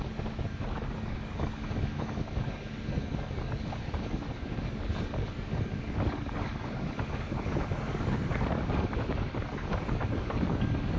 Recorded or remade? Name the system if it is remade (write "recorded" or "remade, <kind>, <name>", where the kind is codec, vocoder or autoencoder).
remade, codec, DAC